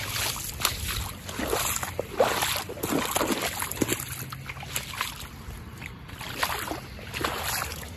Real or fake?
real